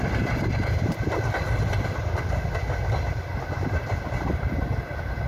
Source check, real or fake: fake